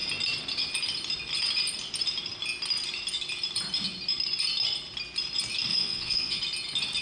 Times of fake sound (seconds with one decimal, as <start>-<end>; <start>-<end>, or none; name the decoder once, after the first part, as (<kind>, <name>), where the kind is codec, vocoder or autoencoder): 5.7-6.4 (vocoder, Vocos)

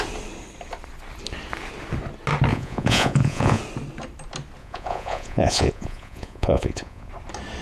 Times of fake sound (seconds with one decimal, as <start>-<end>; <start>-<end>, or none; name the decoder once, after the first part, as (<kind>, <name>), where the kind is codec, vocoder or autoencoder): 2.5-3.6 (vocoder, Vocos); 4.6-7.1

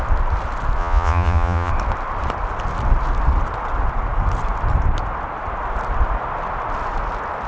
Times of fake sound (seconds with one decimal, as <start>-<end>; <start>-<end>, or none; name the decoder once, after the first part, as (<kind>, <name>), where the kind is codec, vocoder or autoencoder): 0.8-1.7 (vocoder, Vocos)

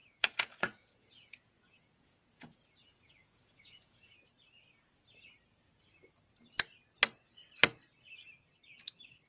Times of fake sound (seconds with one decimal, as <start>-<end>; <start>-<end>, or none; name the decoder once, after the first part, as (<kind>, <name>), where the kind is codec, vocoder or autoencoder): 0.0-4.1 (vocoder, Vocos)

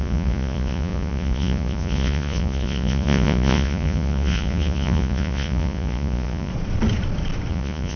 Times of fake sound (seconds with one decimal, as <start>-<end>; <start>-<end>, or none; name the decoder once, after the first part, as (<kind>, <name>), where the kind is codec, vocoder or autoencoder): 0.0-6.5 (vocoder, Vocos); 7.5-8.0

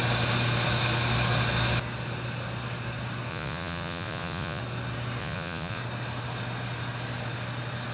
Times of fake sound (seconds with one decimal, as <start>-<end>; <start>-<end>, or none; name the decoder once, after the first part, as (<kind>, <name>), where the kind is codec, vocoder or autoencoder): 3.3-4.6 (vocoder, Vocos); 5.2-5.8

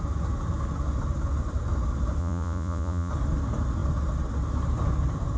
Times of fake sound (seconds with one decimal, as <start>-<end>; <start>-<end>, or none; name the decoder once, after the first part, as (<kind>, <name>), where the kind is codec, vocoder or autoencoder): 2.2-3.1 (vocoder, Vocos)

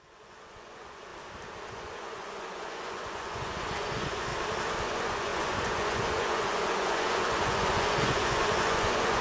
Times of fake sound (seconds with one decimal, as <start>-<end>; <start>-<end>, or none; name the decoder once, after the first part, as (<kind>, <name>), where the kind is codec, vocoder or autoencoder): 0.0-1.1 (vocoder, Vocos); 1.7-4.3; 4.8-9.2